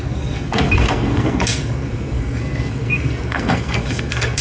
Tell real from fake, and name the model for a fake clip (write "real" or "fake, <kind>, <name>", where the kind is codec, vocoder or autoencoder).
fake, codec, SNAC